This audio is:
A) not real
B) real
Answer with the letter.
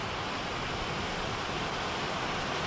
B